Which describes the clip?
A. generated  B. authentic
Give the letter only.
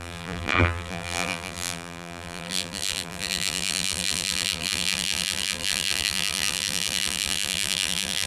A